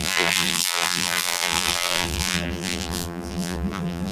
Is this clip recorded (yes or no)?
no